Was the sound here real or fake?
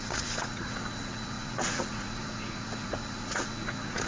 fake